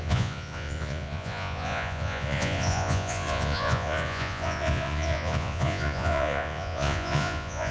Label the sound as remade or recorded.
remade